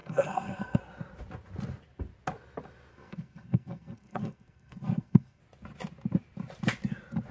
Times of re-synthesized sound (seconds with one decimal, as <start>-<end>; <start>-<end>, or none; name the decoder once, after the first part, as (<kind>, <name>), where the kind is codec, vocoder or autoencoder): 0.0-0.8 (codec, SNAC); 2.9-5.4

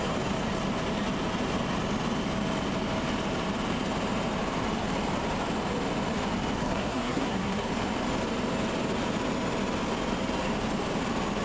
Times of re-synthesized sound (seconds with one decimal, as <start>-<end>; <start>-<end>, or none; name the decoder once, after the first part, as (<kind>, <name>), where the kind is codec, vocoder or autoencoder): 6.6-7.7 (codec, SNAC)

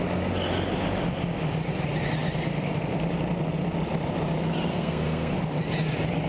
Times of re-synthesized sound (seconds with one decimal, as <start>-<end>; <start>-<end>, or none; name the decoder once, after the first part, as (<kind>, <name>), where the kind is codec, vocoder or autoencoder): 4.7-5.3 (codec, SNAC)

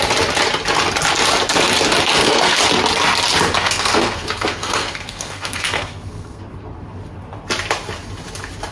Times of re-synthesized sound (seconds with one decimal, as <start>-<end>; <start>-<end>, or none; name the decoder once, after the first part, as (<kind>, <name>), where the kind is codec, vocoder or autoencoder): 2.1-2.6 (codec, SNAC); 3.5-6.4

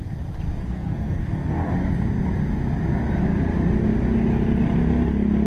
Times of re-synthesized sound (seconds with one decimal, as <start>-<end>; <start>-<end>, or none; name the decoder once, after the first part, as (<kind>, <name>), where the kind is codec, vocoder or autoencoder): 0.6-1.7 (codec, SNAC)

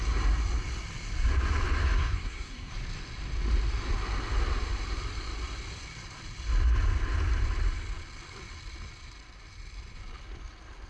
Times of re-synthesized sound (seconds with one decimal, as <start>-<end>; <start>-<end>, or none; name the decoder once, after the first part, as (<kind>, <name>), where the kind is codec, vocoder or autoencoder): 2.0-2.7 (codec, SNAC)

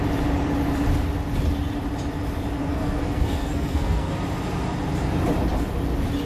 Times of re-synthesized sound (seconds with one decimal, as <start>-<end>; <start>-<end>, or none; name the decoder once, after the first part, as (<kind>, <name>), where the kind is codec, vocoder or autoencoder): 2.6-4.1 (codec, SNAC)